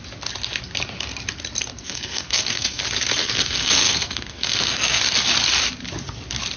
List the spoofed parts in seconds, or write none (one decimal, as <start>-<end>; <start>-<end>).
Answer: 1.7-2.8; 3.2-5.0